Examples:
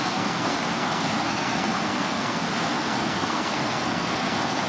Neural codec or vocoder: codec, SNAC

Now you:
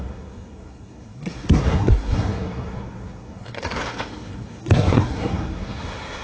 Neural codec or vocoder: codec, SNAC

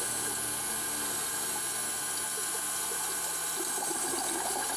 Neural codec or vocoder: none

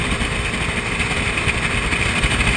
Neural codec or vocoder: none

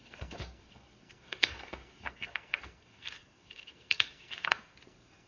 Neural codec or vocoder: codec, SNAC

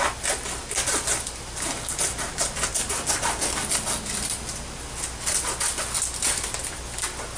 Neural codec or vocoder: none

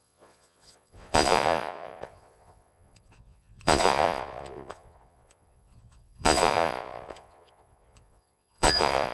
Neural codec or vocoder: vocoder, Vocos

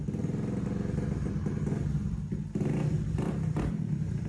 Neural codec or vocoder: none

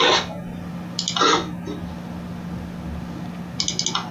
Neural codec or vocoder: none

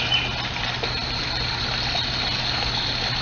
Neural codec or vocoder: none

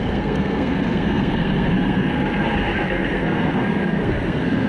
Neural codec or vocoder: codec, SNAC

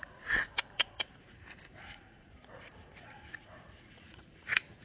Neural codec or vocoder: vocoder, Vocos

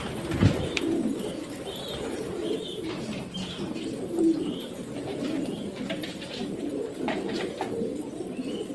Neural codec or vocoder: vocoder, BigVGAN v2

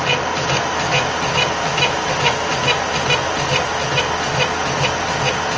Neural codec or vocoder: none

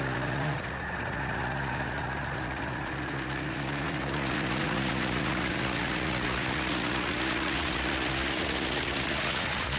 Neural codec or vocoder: vocoder, Vocos